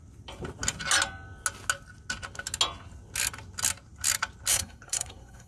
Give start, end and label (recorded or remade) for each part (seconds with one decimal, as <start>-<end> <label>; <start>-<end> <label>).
0.0-4.5 recorded; 4.5-5.5 remade